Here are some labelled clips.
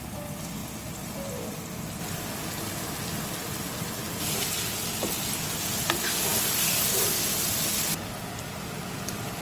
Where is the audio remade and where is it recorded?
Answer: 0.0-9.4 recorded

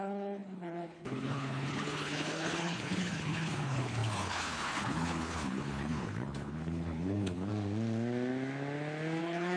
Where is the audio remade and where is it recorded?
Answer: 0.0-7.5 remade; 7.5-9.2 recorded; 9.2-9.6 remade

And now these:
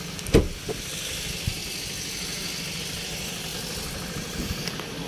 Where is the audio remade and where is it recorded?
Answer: 0.0-3.5 recorded; 3.5-5.1 remade

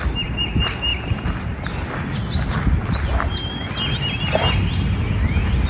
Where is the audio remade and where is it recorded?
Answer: 0.0-5.7 recorded

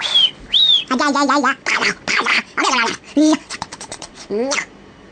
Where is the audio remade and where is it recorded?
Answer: 0.0-2.3 recorded; 2.3-4.3 remade; 4.3-5.1 recorded

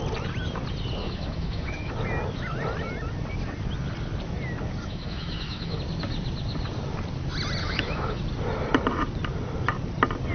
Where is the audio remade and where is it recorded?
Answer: 0.0-1.0 recorded; 1.0-1.9 remade; 1.9-4.8 recorded; 4.8-5.8 remade; 5.8-7.6 recorded; 7.6-8.2 remade; 8.2-10.3 recorded